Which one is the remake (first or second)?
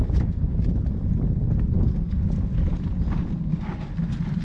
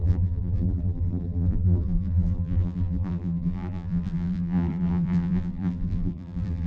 second